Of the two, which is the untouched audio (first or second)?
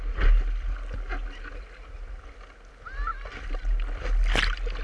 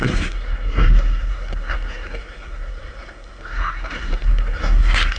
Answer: first